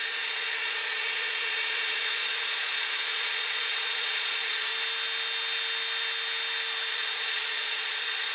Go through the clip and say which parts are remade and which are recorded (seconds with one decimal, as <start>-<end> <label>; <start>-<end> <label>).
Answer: 0.0-4.7 remade; 4.7-6.9 recorded; 6.9-8.3 remade